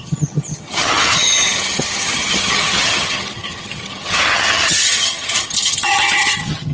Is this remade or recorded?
remade